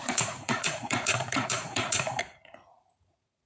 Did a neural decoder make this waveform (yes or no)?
yes